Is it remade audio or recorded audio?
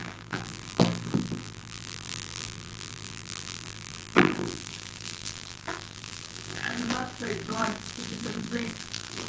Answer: remade